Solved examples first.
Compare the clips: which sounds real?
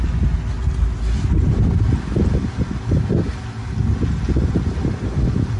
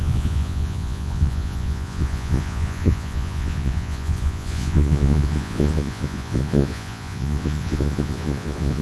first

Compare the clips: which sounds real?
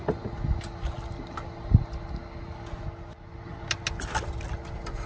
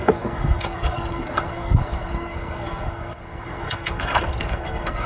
first